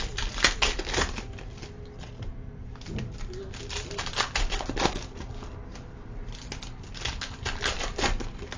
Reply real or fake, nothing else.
real